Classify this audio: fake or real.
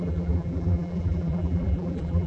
fake